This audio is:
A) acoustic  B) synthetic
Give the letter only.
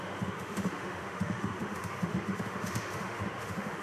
B